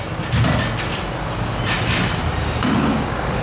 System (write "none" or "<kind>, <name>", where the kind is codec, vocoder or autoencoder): none